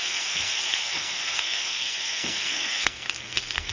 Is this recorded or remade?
remade